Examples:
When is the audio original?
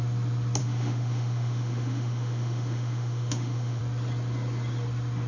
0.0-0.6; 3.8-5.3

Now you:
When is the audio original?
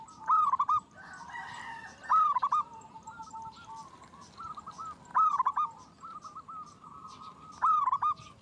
4.8-5.3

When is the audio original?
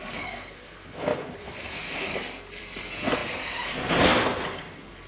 none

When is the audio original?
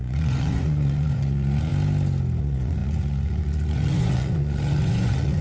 1.7-2.4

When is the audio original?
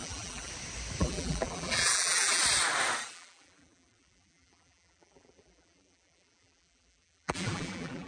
0.5-1.0; 2.4-3.0